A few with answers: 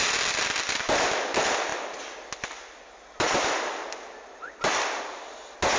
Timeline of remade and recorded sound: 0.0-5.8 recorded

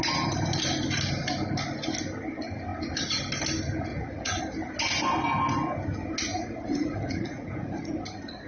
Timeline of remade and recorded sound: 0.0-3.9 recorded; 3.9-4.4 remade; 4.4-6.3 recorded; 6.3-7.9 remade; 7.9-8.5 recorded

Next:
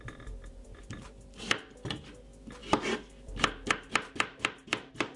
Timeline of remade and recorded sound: 0.0-5.2 recorded

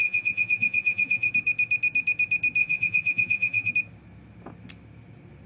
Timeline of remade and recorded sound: 0.0-1.3 remade; 1.3-2.6 recorded; 2.6-3.7 remade; 3.7-5.5 recorded

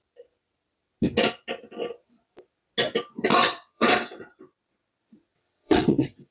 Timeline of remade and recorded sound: 0.0-3.3 recorded; 3.3-4.2 remade; 4.2-5.3 recorded; 5.3-6.3 remade